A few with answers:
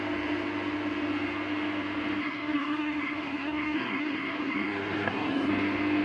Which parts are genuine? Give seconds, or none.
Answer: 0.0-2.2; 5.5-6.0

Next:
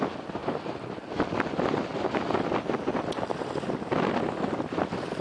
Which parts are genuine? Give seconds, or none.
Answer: 0.0-5.2

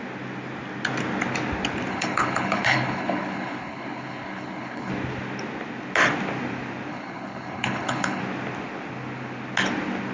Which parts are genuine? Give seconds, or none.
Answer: 0.0-1.9; 4.9-6.9; 8.2-10.1

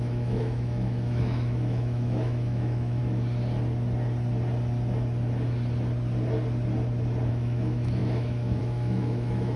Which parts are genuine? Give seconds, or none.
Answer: 3.0-7.3

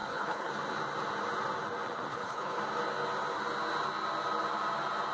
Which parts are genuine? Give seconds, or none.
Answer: 0.5-2.1; 2.6-5.1

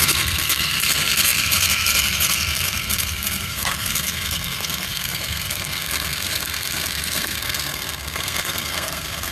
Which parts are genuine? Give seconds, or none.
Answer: none